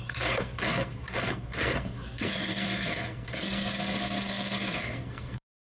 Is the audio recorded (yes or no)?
no